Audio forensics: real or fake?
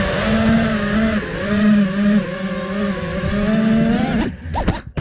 real